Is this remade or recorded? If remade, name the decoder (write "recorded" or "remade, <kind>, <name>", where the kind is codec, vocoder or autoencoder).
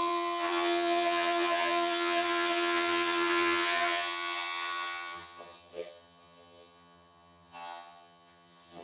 remade, vocoder, HiFi-GAN